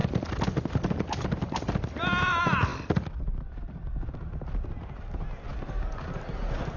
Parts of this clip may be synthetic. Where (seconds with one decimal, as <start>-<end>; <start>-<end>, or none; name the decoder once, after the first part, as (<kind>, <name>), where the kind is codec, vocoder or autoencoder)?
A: none